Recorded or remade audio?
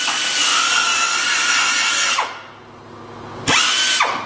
recorded